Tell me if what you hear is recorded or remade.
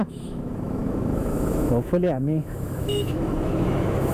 remade